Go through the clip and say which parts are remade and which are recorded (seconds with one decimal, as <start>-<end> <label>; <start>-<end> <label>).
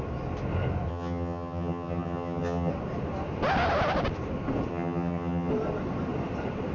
0.0-0.9 recorded; 0.9-2.7 remade; 2.7-4.7 recorded; 4.7-5.5 remade; 5.5-6.7 recorded